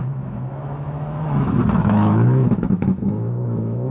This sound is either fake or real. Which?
fake